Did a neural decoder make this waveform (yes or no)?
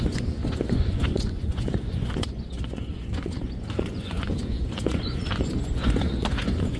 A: yes